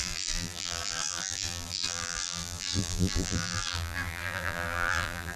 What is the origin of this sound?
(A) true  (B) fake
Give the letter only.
B